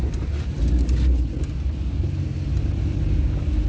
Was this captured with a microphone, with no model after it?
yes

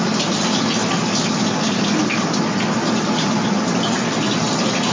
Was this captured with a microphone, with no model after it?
yes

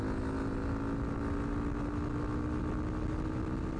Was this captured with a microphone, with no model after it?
yes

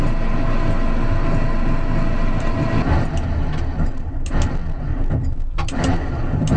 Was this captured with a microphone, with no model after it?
yes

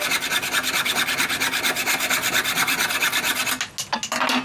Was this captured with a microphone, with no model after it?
yes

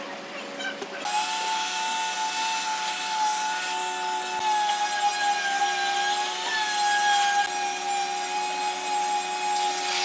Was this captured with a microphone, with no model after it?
yes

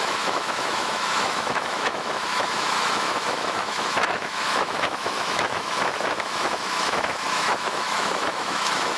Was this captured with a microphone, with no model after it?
no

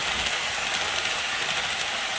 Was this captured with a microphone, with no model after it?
yes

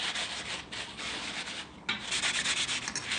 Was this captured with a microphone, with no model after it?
yes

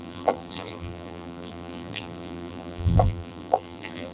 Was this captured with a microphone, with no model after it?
no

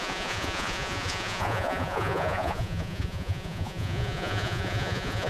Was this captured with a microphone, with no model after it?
no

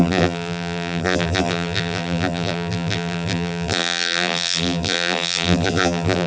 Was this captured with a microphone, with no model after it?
no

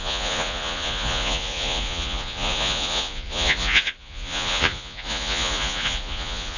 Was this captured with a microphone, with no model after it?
no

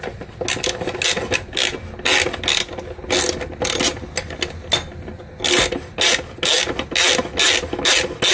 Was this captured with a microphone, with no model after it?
yes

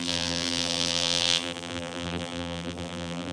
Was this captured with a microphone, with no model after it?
no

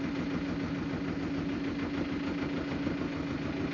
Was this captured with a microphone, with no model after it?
yes